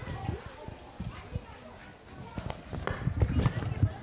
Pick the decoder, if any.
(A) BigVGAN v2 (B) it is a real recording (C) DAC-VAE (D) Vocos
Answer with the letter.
B